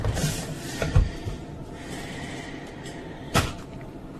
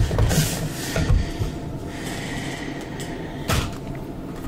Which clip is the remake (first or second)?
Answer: first